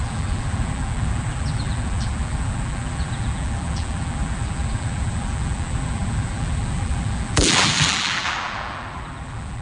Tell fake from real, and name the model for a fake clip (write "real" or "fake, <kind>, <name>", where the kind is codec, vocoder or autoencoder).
fake, vocoder, BigVGAN v2